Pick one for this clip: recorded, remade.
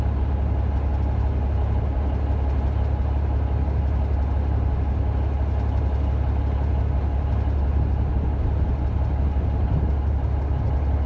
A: recorded